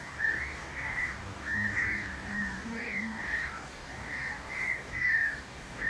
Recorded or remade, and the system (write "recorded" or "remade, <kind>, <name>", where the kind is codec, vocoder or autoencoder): remade, codec, DAC